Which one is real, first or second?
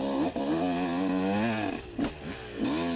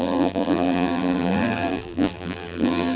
first